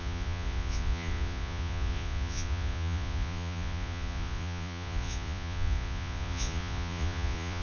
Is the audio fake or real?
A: fake